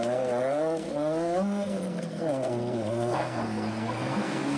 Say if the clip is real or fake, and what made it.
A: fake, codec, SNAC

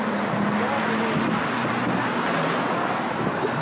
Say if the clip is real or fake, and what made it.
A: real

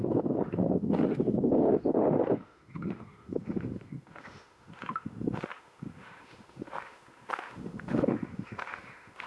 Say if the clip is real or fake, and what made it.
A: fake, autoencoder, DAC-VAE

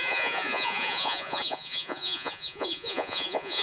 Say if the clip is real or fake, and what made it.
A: fake, vocoder, Vocos